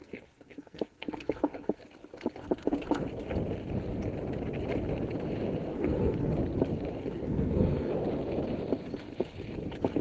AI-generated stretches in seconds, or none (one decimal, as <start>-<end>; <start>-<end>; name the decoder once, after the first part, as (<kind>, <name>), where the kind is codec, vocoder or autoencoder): 0.0-1.8 (codec, SNAC); 5.7-6.3; 7.0-7.9